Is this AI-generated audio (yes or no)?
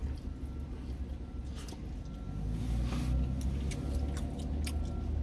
no